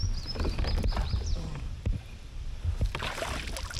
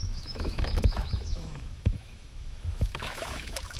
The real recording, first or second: first